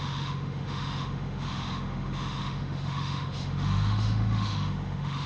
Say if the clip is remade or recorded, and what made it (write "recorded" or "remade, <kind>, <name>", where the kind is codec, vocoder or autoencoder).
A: remade, autoencoder, DAC-VAE